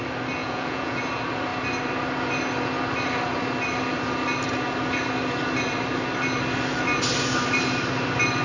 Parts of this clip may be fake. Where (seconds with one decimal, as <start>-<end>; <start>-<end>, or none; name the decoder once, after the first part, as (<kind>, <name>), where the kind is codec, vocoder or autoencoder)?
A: 0.4-1.0 (vocoder, Vocos)